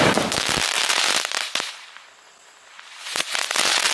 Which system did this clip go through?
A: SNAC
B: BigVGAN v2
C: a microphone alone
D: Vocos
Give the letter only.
C